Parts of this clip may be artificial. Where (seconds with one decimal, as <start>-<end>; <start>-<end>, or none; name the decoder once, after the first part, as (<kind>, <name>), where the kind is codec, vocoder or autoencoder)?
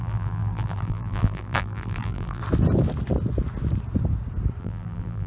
0.0-2.4 (vocoder, BigVGAN v2); 4.6-5.3